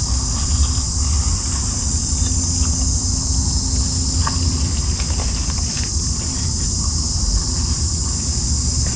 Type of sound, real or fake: real